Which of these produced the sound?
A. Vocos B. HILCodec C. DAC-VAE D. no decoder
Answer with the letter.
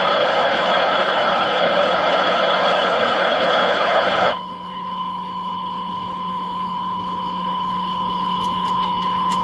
B